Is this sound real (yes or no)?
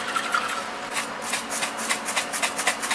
no